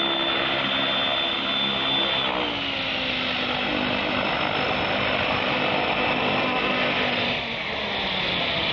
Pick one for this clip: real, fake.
real